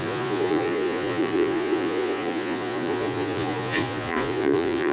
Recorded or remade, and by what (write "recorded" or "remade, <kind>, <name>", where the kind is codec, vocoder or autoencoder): remade, vocoder, Vocos